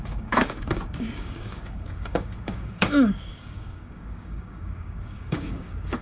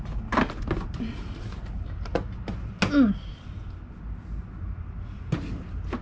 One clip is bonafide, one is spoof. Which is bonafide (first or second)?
second